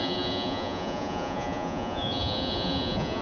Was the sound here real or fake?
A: fake